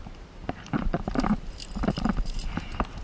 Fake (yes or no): yes